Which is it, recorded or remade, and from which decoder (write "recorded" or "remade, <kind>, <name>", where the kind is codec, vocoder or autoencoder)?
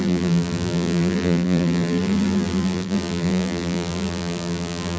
remade, vocoder, BigVGAN v2